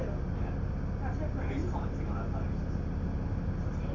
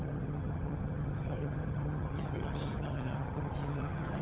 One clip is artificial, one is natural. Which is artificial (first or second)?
second